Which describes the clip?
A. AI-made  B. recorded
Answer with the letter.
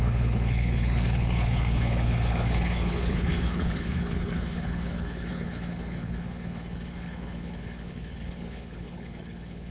A